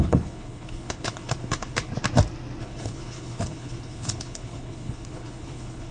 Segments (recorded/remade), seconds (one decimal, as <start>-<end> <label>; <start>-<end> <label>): 0.0-1.9 remade; 1.9-2.6 recorded; 2.6-5.9 remade